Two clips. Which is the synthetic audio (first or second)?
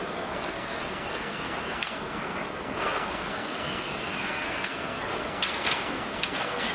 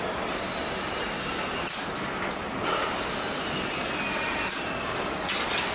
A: first